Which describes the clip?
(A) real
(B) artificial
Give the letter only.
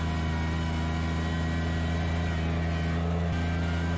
A